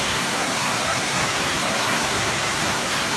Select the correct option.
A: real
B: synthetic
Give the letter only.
B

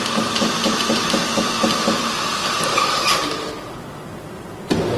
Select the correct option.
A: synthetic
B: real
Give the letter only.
B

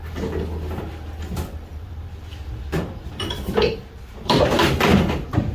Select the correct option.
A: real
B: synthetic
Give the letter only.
A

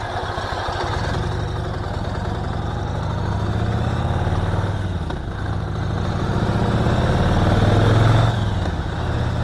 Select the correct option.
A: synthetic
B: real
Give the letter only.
B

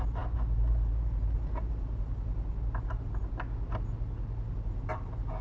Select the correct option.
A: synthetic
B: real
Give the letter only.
B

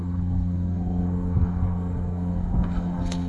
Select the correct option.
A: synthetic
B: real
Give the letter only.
A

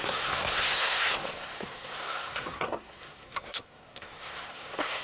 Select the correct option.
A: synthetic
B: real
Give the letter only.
A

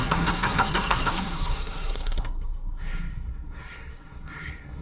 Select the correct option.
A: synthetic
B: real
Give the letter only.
A